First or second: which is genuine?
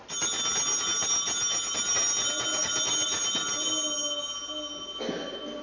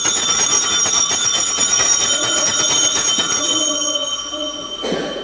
first